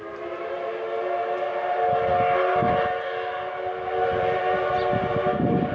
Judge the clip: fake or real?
real